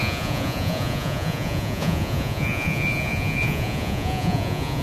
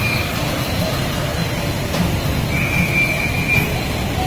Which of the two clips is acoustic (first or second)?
second